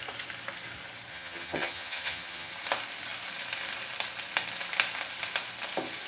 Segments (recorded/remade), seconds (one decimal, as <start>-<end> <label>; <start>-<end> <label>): 0.0-1.1 recorded; 1.1-2.5 remade; 2.5-6.1 recorded